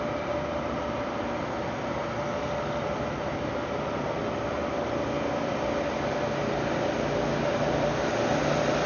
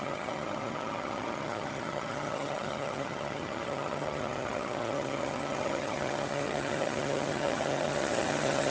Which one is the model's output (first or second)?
second